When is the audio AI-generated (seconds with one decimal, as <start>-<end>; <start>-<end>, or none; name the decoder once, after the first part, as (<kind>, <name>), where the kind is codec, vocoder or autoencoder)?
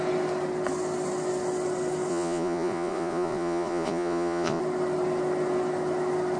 2.1-4.6 (vocoder, Vocos)